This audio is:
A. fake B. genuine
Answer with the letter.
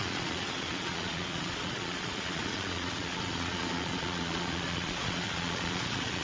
A